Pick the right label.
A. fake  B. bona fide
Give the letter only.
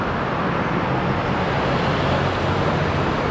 B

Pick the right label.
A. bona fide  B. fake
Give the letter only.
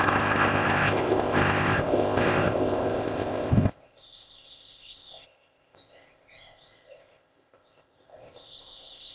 B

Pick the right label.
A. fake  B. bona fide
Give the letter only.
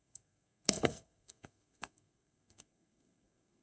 A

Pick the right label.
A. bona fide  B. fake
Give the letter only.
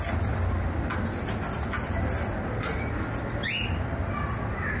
A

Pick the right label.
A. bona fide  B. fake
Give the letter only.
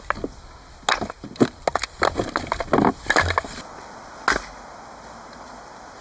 A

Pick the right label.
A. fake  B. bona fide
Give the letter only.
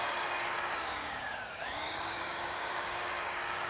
A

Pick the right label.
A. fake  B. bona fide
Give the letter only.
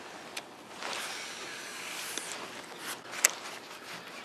B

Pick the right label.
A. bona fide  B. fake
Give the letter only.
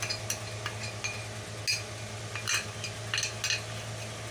A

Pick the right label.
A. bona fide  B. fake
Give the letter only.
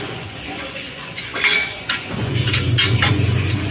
B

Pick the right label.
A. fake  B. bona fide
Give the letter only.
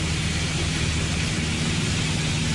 B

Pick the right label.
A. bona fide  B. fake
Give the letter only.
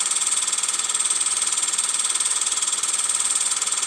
B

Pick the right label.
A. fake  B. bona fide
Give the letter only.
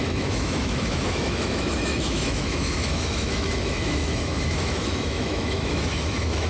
A